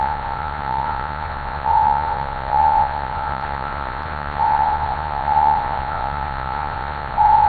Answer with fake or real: fake